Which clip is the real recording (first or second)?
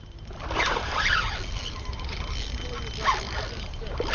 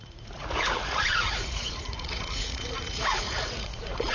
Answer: first